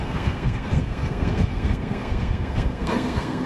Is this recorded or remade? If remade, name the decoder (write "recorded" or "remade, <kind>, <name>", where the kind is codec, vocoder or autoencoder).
remade, codec, SNAC